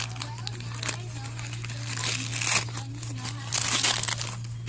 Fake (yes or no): no